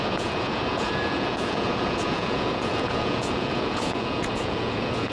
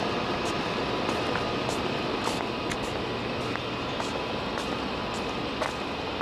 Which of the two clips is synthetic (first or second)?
first